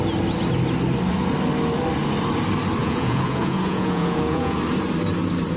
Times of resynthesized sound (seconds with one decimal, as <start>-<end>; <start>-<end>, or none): 2.8-4.6

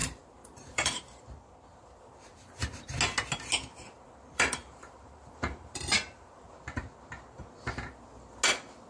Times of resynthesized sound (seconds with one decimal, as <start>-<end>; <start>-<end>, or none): 0.0-1.2; 1.7-2.8; 3.7-6.4

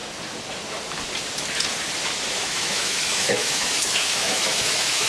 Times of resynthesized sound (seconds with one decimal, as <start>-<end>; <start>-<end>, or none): 2.3-5.1

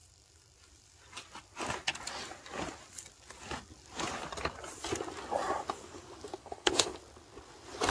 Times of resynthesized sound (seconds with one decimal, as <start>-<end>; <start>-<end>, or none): 6.4-7.0

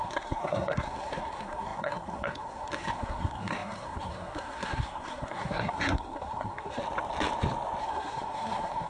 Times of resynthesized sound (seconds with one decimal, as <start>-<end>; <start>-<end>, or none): 0.0-6.8; 7.8-8.9

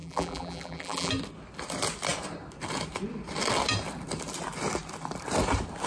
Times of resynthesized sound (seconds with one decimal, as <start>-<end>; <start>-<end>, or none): 0.0-1.1